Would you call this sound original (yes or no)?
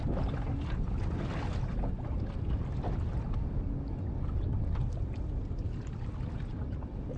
yes